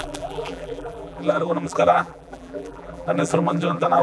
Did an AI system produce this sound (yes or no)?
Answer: yes